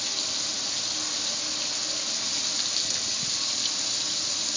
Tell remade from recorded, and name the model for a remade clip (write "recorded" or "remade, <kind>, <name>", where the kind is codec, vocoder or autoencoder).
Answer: recorded